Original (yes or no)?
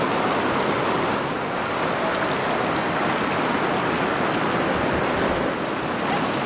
yes